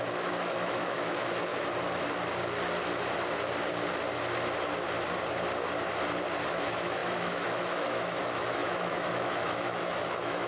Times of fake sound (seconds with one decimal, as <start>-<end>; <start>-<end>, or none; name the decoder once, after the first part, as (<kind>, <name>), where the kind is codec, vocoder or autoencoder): 0.0-1.5 (autoencoder, DAC-VAE); 6.5-10.5